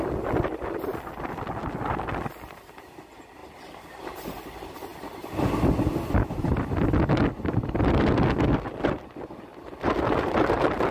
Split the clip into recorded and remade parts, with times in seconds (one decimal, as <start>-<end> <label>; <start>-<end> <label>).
0.0-4.9 recorded; 4.9-8.4 remade; 8.4-10.9 recorded